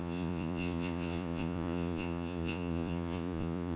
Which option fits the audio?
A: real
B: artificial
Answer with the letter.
B